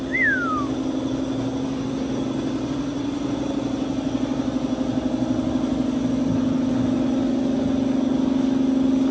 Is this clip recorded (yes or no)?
yes